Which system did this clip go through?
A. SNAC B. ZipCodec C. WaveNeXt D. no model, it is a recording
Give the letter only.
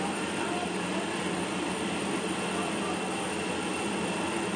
D